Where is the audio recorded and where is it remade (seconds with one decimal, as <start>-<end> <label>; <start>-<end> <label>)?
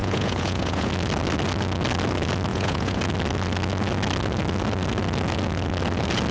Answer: 0.0-0.9 remade; 0.9-2.5 recorded; 2.5-3.0 remade; 3.0-6.3 recorded